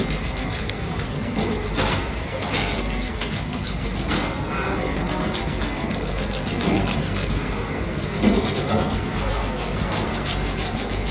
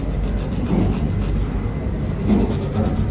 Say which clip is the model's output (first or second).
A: first